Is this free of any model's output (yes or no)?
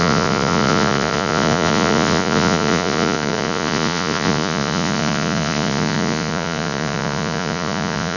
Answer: no